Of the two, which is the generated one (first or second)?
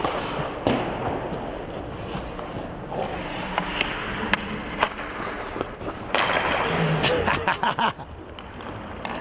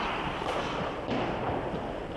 second